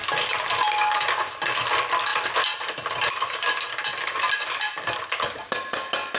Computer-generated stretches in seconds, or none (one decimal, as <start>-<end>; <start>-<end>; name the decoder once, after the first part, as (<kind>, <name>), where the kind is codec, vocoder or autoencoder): none